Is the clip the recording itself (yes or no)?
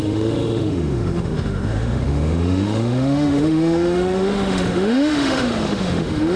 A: no